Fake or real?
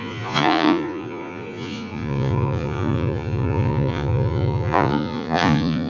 fake